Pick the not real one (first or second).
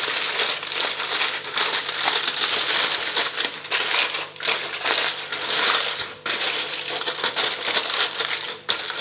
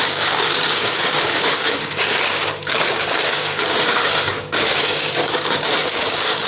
second